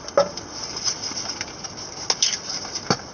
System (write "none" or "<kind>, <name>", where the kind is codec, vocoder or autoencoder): none